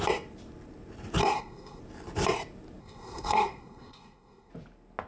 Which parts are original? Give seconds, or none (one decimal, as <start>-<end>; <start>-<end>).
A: 0.0-1.2; 1.8-2.8; 4.5-5.1